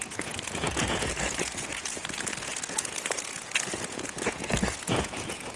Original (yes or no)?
no